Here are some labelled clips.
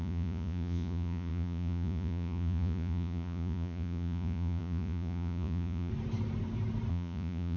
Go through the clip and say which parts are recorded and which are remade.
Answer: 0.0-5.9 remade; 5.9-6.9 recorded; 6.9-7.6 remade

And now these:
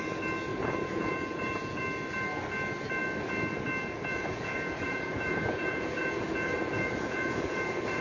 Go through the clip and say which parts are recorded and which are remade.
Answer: 0.0-0.5 recorded; 0.5-1.8 remade; 1.8-4.1 recorded; 4.1-8.0 remade

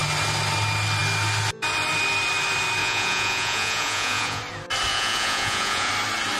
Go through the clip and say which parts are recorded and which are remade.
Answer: 0.0-2.8 recorded; 2.8-4.4 remade; 4.4-4.9 recorded; 4.9-5.9 remade; 5.9-6.4 recorded

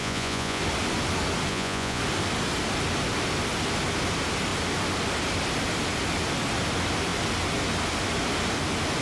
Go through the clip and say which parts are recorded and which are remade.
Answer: 0.0-0.6 remade; 0.6-1.5 recorded; 1.5-2.0 remade; 2.0-9.0 recorded